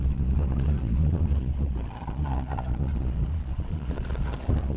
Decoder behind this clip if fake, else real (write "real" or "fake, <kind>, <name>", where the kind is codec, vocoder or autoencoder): fake, vocoder, Vocos